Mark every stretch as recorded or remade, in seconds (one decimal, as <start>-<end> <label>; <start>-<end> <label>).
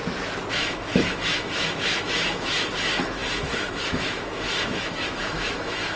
0.0-0.5 recorded; 0.5-6.0 remade